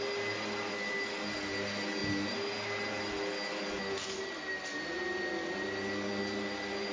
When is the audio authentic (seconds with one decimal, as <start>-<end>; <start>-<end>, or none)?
0.0-6.9